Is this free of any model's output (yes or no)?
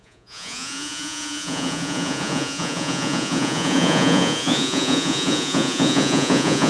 no